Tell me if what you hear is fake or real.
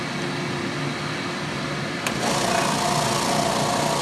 real